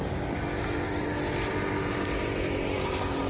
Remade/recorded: recorded